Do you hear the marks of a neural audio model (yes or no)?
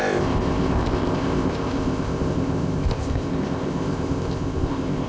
yes